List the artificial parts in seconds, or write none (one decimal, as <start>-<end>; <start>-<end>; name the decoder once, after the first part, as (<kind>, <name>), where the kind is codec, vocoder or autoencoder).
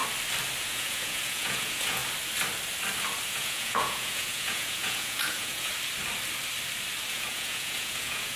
0.6-2.0 (vocoder, Vocos); 3.3-5.7; 7.1-8.4